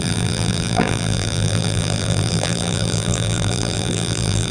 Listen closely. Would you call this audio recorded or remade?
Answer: remade